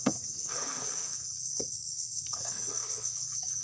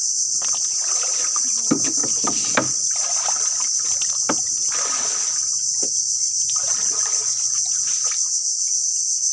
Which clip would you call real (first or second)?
second